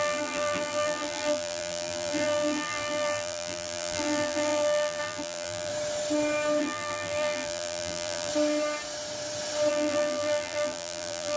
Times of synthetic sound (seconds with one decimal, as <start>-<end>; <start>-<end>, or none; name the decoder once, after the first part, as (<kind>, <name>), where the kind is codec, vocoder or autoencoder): 0.0-5.7 (vocoder, BigVGAN v2); 6.6-8.3; 9.7-11.4